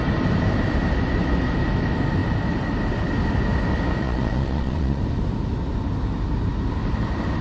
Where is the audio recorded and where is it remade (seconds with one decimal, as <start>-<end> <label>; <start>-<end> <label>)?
0.0-4.0 recorded; 4.0-5.0 remade; 5.0-7.4 recorded